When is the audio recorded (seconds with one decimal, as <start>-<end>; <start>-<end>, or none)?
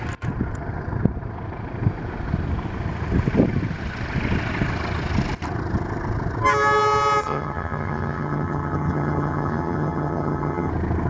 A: 0.0-7.2; 10.7-11.1